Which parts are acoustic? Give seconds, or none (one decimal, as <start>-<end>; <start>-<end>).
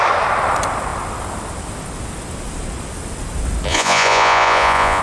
0.0-3.7